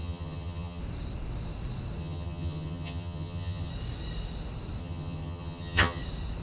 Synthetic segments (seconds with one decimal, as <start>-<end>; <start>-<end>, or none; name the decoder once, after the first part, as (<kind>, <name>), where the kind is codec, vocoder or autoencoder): 0.0-0.8 (vocoder, HiFi-GAN); 2.0-3.7; 4.8-6.0